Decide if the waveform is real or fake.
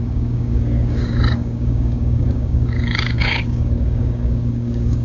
fake